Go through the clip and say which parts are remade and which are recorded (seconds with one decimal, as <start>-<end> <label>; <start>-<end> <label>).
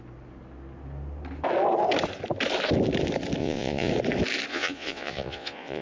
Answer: 0.0-3.4 recorded; 3.4-3.9 remade; 3.9-4.5 recorded; 4.5-5.8 remade